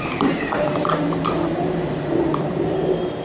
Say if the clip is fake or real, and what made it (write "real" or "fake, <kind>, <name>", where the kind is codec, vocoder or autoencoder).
fake, vocoder, BigVGAN v2